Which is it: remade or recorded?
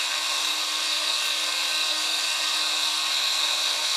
remade